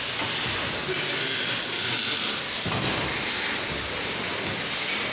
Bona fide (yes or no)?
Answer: yes